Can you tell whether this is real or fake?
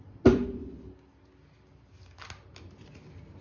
real